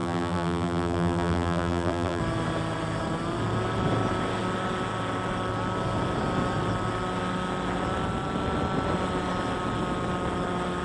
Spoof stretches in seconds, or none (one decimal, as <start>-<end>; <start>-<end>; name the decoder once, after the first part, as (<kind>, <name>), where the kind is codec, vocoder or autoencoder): 0.0-2.2 (vocoder, BigVGAN v2)

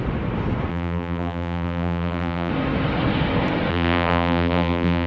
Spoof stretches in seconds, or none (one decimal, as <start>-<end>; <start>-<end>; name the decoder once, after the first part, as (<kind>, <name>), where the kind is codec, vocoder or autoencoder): 0.7-2.5 (vocoder, BigVGAN v2); 3.7-5.1